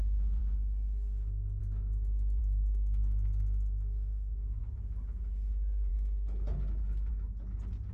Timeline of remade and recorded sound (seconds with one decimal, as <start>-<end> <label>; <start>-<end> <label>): 0.0-2.4 recorded; 2.4-4.6 remade; 4.6-7.9 recorded